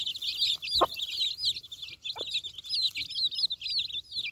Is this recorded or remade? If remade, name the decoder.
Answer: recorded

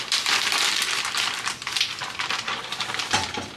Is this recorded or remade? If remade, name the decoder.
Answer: remade, vocoder, BigVGAN v2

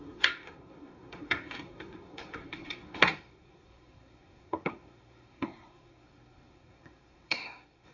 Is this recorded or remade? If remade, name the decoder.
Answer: remade, codec, SNAC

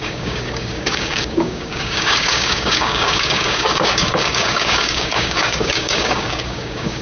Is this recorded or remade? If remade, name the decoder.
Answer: remade, codec, DAC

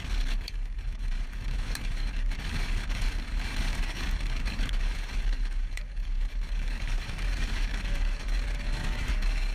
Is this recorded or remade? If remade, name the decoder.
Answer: remade, codec, DAC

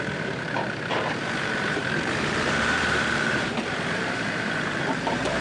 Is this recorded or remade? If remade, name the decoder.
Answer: remade, vocoder, BigVGAN v2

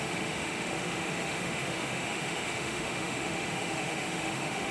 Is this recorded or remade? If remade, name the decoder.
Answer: remade, autoencoder, DAC-VAE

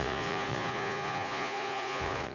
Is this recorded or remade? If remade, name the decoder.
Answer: remade, vocoder, Vocos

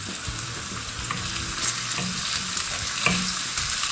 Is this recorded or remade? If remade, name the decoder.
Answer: recorded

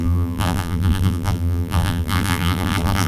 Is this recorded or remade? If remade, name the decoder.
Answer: remade, vocoder, BigVGAN v2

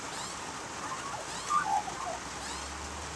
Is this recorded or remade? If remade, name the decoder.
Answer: recorded